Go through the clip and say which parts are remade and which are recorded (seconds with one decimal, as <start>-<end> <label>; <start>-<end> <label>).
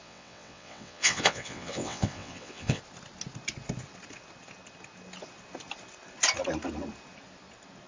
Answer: 0.0-2.8 remade; 2.8-7.9 recorded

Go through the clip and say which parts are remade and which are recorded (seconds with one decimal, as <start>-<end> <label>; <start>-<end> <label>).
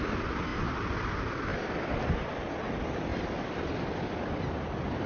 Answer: 0.0-0.5 recorded; 0.5-1.0 remade; 1.0-1.5 recorded; 1.5-2.1 remade; 2.1-3.1 recorded; 3.1-4.2 remade; 4.2-5.1 recorded